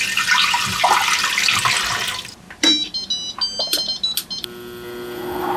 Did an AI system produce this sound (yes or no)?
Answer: no